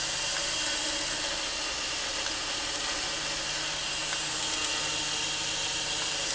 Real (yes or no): yes